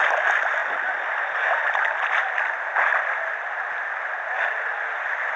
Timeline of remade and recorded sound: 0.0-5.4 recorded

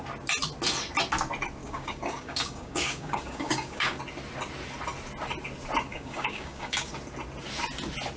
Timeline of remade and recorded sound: 0.0-1.6 recorded; 1.6-4.0 remade; 4.0-5.9 recorded; 5.9-6.9 remade; 6.9-8.2 recorded

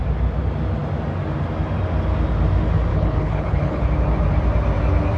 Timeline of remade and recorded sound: 0.0-2.9 recorded; 2.9-3.9 remade; 3.9-5.2 recorded

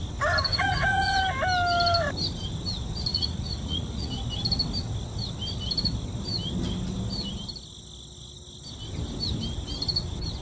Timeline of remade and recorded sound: 0.0-0.5 recorded; 0.5-1.2 remade; 1.2-3.1 recorded; 3.1-4.1 remade; 4.1-10.4 recorded

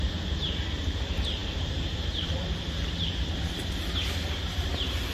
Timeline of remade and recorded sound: 0.0-5.1 remade

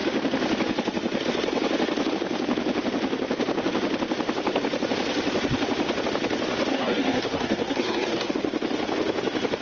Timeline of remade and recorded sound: 0.0-6.7 recorded; 6.7-8.3 remade; 8.3-9.6 recorded